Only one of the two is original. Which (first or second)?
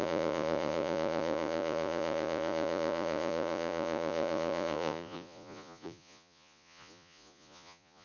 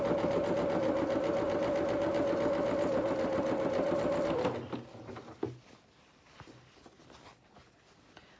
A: second